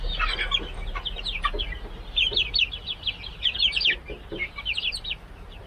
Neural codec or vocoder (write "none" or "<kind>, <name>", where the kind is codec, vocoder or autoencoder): none